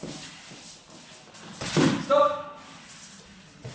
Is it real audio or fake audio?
real